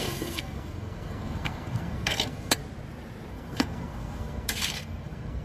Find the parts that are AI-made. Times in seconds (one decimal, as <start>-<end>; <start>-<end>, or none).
0.0-2.6; 3.3-5.4